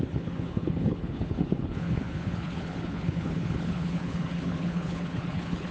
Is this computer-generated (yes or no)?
yes